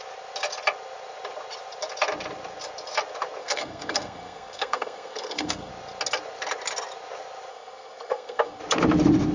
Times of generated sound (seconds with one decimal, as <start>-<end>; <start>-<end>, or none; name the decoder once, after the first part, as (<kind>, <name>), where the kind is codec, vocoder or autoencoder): 3.4-5.7 (codec, SNAC); 7.5-8.6